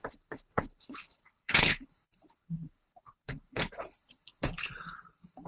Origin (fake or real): fake